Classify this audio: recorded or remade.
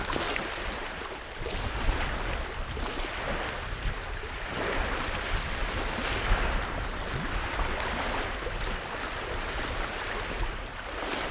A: recorded